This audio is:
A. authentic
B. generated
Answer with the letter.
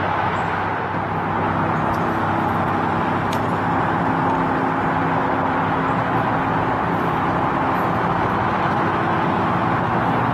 A